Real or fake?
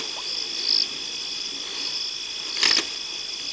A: real